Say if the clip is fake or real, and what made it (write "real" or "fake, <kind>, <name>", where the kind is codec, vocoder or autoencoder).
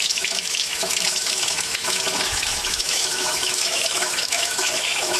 fake, autoencoder, DAC-VAE